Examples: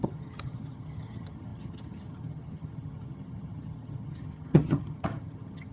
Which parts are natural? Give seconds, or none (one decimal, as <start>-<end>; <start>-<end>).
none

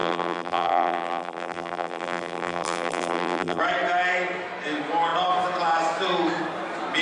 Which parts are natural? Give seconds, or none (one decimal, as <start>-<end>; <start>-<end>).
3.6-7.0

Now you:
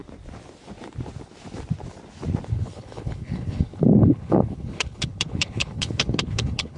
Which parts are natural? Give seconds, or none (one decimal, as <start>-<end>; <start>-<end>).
0.0-2.5

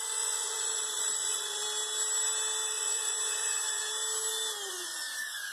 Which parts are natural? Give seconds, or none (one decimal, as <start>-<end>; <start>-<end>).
1.6-2.7; 3.8-4.7

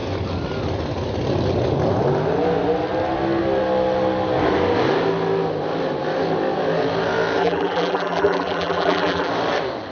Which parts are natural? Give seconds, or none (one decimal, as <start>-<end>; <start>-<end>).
0.0-7.4; 9.3-9.9